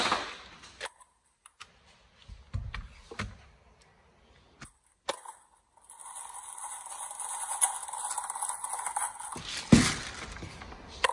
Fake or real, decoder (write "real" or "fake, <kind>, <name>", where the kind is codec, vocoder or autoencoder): real